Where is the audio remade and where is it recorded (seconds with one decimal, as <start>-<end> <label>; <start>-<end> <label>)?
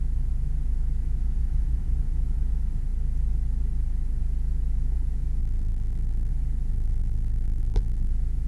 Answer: 0.0-5.4 recorded; 5.4-6.3 remade; 6.3-6.7 recorded; 6.7-8.1 remade; 8.1-8.5 recorded